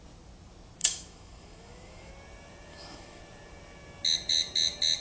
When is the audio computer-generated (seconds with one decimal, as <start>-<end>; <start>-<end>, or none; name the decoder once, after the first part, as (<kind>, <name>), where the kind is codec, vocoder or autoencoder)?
0.8-2.1 (autoencoder, DAC-VAE); 2.7-3.2